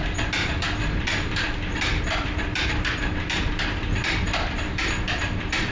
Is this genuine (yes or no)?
no